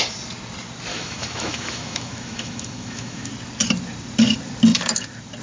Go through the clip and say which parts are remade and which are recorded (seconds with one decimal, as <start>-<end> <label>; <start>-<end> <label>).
0.0-0.9 recorded; 0.9-3.3 remade; 3.3-5.4 recorded